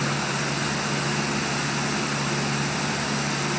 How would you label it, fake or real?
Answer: real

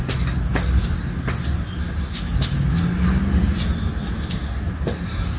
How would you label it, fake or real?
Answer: real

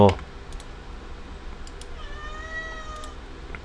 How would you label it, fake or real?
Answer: real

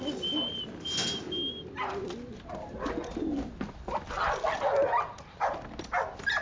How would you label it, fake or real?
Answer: real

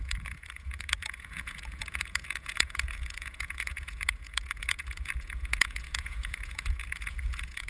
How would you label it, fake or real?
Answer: fake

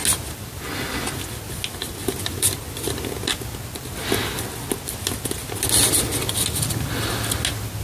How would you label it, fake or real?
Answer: real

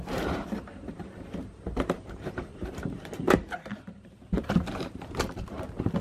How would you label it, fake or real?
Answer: fake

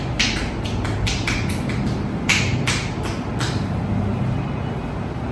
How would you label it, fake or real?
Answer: real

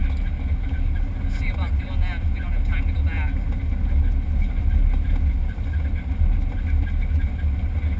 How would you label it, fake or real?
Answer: real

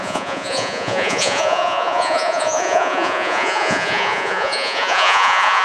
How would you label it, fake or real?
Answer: fake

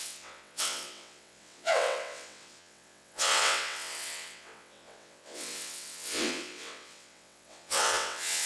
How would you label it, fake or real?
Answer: fake